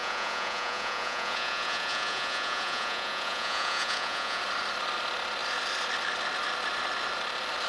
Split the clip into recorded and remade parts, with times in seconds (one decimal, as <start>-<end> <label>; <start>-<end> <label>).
0.0-4.4 remade; 4.4-7.7 recorded